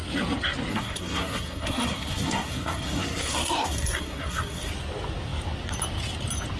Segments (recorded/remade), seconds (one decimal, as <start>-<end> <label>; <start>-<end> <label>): 0.0-0.7 recorded; 0.7-4.7 remade; 4.7-6.6 recorded